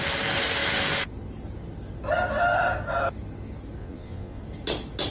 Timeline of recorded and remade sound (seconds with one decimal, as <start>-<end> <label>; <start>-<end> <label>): 0.0-3.8 recorded; 3.8-4.4 remade; 4.4-5.1 recorded